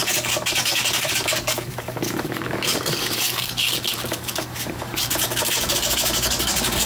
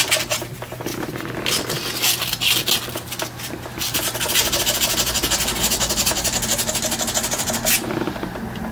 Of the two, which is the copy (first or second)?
first